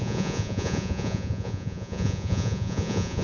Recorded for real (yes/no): no